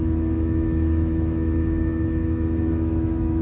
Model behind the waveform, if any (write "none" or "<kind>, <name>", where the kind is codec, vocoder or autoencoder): autoencoder, DAC-VAE